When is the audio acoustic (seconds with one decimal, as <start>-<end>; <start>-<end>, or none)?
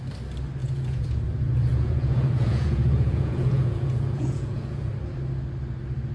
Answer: 0.0-0.6; 1.2-1.7; 4.9-6.1